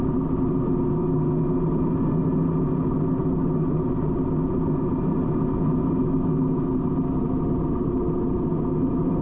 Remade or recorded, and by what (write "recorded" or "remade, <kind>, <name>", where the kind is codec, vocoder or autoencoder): recorded